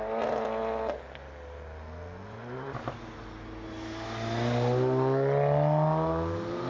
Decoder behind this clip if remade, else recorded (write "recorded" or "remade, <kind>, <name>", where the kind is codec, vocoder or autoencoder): recorded